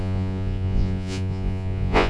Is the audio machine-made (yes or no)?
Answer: yes